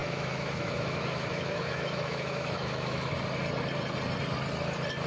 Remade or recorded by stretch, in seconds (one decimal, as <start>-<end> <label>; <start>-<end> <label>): 0.0-3.1 remade; 3.1-5.1 recorded